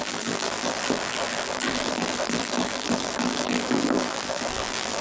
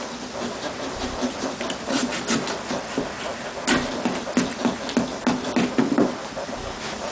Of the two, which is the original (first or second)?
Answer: second